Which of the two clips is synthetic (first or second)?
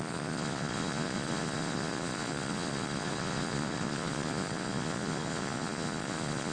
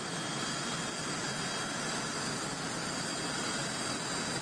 first